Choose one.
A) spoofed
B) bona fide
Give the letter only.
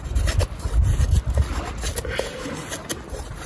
B